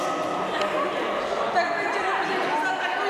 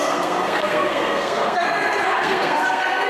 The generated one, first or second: second